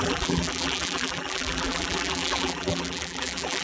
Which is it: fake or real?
fake